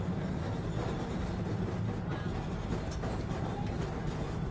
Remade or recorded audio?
recorded